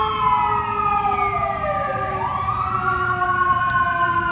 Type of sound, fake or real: real